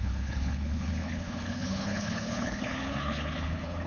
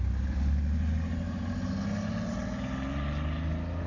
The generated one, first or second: first